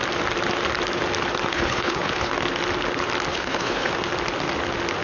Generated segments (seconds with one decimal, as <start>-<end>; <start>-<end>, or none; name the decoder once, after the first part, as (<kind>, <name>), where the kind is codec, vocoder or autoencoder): 1.5-2.3 (codec, HILCodec); 3.3-3.9